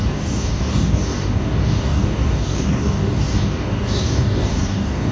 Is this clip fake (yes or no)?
yes